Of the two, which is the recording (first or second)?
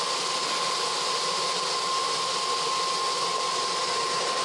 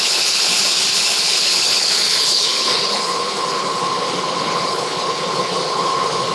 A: first